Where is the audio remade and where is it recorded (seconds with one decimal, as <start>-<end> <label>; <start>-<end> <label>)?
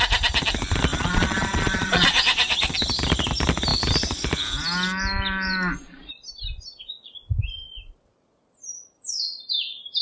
0.0-0.9 recorded; 0.9-2.7 remade; 2.7-10.0 recorded